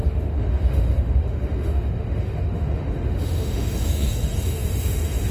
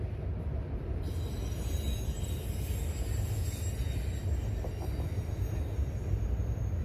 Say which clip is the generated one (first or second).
first